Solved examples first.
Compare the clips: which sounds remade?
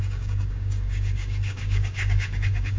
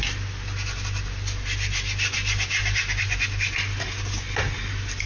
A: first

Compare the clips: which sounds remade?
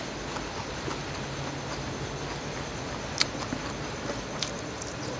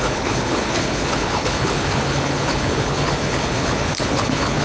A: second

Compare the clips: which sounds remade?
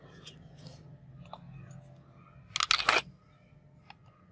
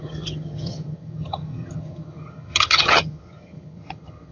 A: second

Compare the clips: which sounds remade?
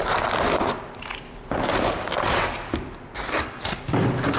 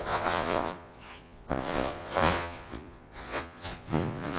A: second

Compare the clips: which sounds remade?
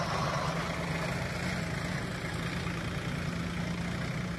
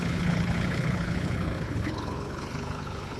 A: second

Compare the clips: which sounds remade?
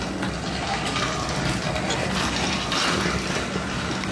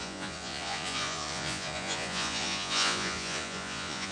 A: second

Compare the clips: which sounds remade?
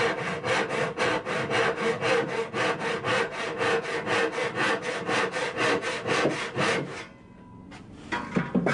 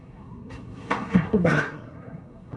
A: second